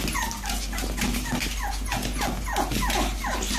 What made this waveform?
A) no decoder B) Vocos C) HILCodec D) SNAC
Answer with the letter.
A